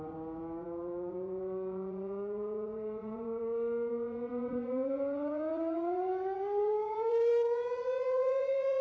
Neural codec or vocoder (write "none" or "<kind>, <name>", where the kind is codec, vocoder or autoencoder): vocoder, Vocos